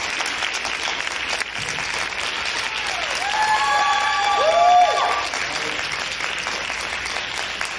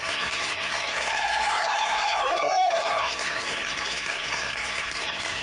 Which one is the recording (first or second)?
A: first